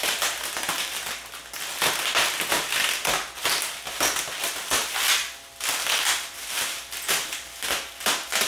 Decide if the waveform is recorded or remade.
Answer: recorded